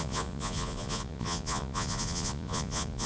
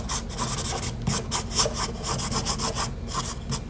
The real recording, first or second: second